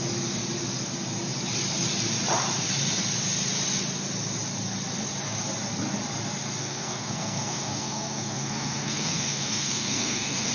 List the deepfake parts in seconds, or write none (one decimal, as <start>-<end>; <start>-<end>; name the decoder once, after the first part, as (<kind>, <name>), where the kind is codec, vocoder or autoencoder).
6.6-10.5 (codec, SNAC)